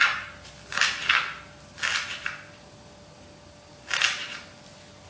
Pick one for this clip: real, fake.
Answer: real